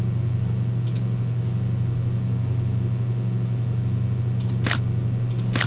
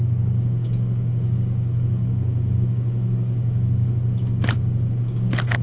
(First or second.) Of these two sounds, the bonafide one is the first